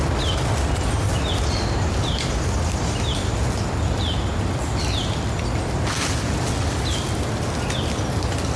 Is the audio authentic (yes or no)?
yes